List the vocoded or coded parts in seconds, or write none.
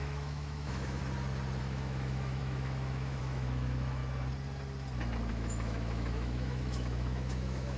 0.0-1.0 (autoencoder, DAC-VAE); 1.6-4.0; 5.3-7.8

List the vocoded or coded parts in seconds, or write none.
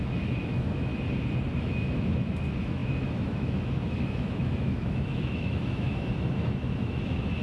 0.0-0.9 (autoencoder, DAC-VAE); 1.6-7.4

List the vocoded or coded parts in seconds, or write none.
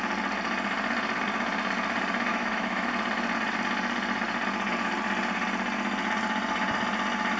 2.3-2.9 (autoencoder, DAC-VAE)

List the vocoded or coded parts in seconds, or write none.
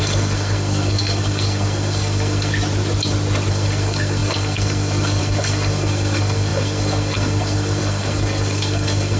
0.0-2.5 (codec, SNAC); 3.5-9.2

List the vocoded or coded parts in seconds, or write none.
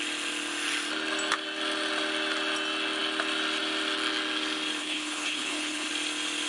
4.8-5.9 (codec, HILCodec)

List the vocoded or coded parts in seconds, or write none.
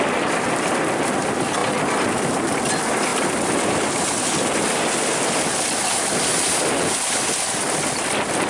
none